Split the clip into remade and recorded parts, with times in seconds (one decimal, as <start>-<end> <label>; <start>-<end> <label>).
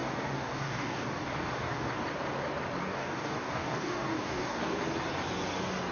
0.0-1.9 remade; 1.9-2.8 recorded; 2.8-4.8 remade; 4.8-5.9 recorded